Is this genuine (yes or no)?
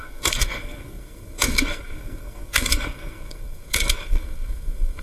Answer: no